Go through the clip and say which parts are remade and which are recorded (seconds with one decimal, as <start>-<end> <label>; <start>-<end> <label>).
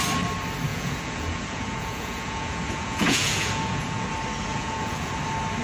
0.0-0.7 recorded; 0.7-4.1 remade; 4.1-4.5 recorded; 4.5-5.1 remade; 5.1-5.6 recorded